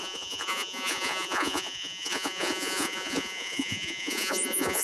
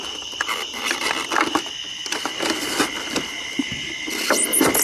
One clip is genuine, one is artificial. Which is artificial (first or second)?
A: first